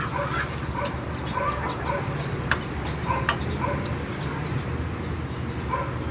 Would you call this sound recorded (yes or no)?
yes